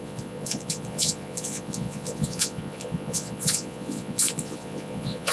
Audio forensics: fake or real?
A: fake